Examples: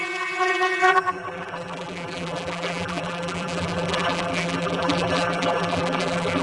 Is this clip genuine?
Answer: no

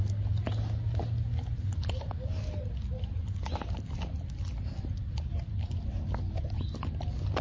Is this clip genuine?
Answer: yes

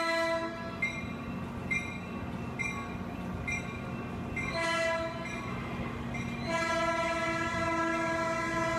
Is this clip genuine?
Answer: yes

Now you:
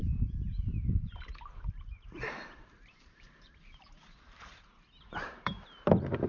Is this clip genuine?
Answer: no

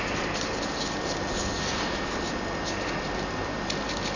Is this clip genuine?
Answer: yes